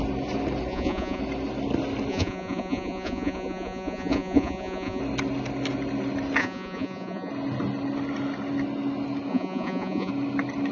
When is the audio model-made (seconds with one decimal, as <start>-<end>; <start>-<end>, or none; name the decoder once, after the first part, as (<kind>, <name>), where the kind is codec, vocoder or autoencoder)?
0.7-1.2 (vocoder, Vocos); 2.1-5.0; 6.4-7.3; 9.3-10.1